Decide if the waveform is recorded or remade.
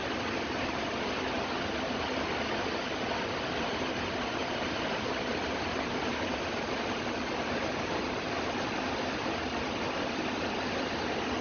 recorded